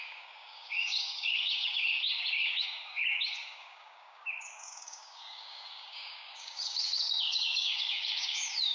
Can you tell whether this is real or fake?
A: fake